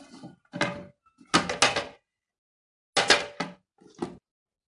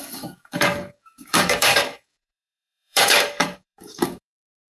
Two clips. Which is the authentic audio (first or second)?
first